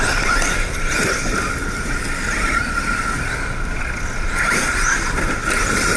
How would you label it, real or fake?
real